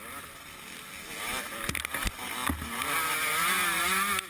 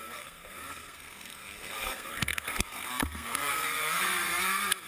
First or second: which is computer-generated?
second